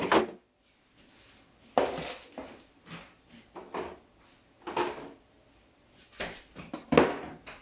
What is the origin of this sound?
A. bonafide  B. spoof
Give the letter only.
A